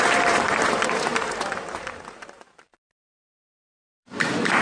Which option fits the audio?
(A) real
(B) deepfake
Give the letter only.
B